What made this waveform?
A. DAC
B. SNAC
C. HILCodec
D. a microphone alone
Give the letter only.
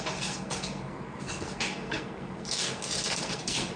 B